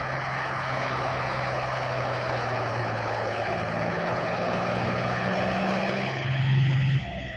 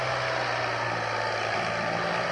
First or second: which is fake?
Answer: first